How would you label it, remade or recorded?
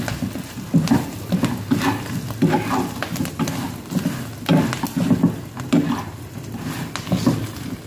recorded